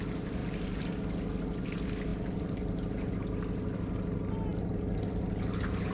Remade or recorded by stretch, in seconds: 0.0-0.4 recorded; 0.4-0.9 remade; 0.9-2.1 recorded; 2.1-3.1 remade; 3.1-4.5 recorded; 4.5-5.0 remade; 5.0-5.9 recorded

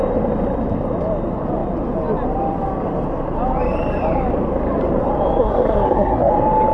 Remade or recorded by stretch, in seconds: 0.0-5.4 recorded; 5.4-6.3 remade; 6.3-6.7 recorded